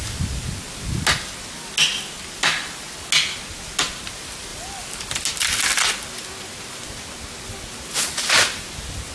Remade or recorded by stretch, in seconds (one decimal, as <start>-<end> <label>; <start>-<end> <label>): 0.0-9.1 recorded